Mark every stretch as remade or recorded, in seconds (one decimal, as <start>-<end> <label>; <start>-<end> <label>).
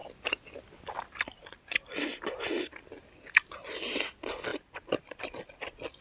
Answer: 0.0-4.5 recorded; 4.5-5.3 remade; 5.3-6.0 recorded